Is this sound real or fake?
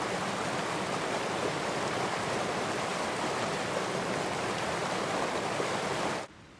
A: real